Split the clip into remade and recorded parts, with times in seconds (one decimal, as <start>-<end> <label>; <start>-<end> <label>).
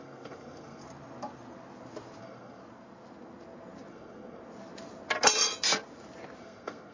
0.0-0.8 remade; 0.8-2.2 recorded; 2.2-2.6 remade; 2.6-3.9 recorded; 3.9-4.4 remade; 4.4-6.4 recorded; 6.4-6.9 remade